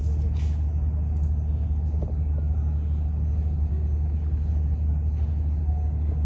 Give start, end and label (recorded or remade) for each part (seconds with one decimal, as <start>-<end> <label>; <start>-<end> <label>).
0.0-6.2 recorded